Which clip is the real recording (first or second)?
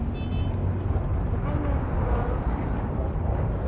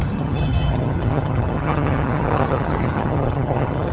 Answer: first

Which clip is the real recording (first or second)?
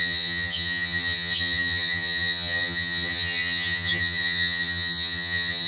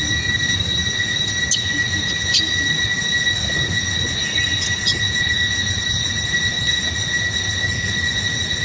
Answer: second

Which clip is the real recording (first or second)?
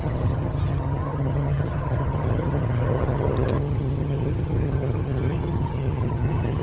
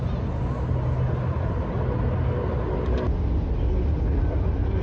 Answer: second